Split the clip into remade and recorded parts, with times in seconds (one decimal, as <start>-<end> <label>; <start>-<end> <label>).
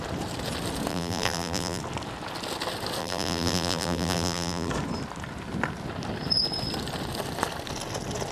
0.0-0.9 recorded; 0.9-1.8 remade; 1.8-3.0 recorded; 3.0-4.7 remade; 4.7-8.3 recorded